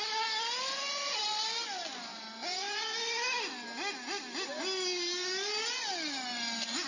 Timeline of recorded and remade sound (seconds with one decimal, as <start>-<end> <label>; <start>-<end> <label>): 0.0-2.1 recorded; 2.1-2.8 remade; 2.8-6.9 recorded